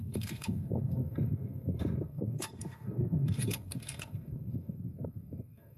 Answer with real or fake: fake